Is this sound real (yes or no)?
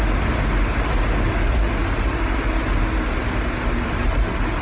yes